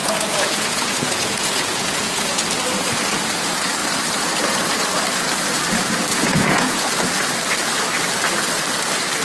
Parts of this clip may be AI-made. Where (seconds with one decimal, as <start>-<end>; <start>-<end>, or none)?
0.0-2.4; 6.1-6.9